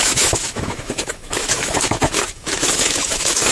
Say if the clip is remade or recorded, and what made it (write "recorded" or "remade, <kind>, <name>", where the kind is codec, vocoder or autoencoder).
remade, autoencoder, DAC-VAE